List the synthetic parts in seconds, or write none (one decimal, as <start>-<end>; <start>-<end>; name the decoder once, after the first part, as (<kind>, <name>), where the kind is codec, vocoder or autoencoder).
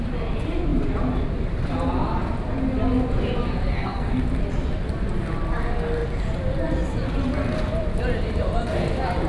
3.7-4.2 (codec, SNAC)